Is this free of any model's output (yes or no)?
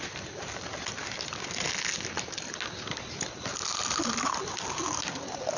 yes